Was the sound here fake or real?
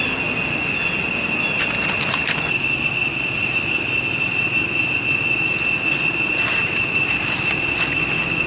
real